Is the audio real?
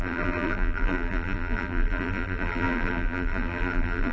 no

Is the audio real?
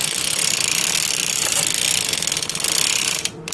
yes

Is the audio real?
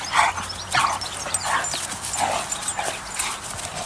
yes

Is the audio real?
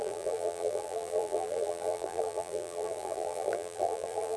no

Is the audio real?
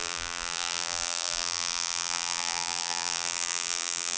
no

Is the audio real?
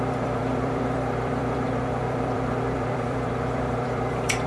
no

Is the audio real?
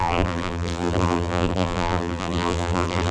no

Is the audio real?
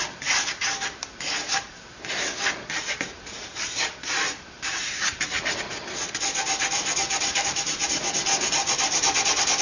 no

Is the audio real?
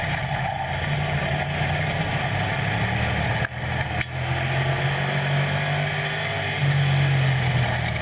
yes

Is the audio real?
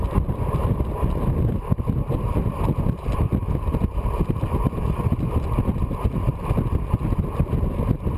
yes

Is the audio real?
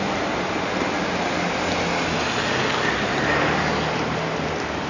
yes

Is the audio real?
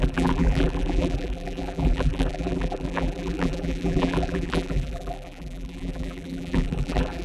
no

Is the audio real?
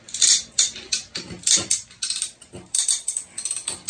yes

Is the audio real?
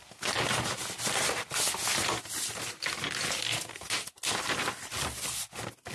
yes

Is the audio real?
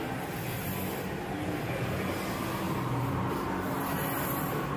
yes